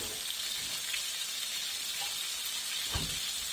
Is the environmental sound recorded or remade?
recorded